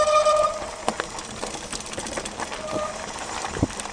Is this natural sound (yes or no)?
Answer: yes